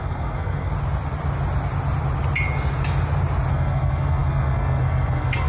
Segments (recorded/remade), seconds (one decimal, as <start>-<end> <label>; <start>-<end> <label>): 0.0-0.7 remade; 0.7-3.5 recorded; 3.5-5.5 remade